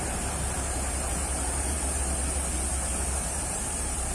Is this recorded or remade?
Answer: remade